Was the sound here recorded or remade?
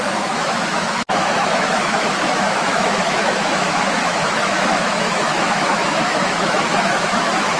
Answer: remade